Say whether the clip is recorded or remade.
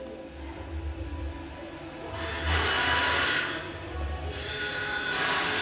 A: recorded